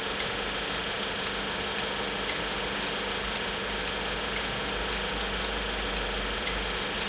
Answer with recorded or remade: recorded